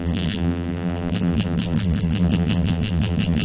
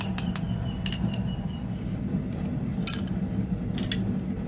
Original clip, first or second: second